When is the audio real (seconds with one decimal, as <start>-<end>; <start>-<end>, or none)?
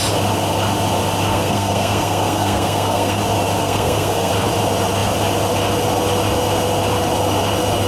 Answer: 0.0-1.3; 3.2-3.6; 4.3-7.9